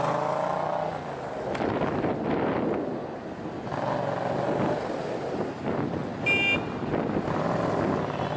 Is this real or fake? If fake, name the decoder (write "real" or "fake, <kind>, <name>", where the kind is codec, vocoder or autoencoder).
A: real